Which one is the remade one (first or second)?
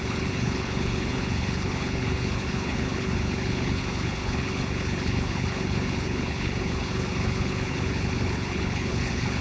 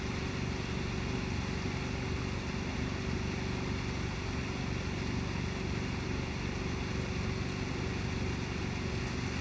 first